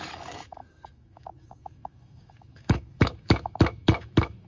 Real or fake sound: fake